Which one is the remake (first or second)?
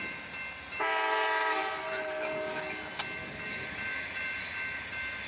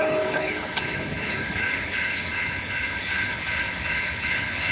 second